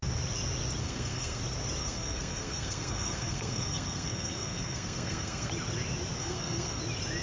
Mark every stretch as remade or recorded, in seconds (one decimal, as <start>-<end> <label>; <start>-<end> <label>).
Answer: 0.0-0.8 recorded; 0.8-1.4 remade; 1.4-1.8 recorded; 1.8-5.5 remade; 5.5-6.2 recorded; 6.2-6.8 remade; 6.8-7.2 recorded